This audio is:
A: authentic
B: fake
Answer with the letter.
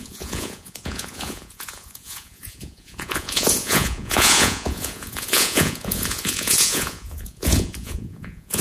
B